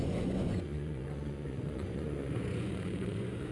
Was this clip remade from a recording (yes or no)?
yes